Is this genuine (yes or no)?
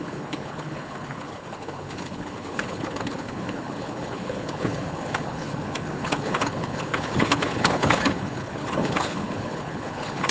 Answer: no